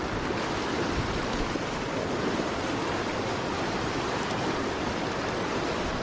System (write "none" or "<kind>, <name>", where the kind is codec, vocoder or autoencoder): none